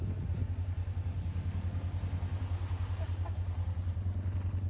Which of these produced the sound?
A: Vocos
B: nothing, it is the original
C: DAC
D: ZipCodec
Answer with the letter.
B